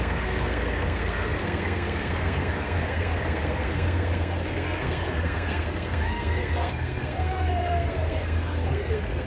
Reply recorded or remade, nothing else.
remade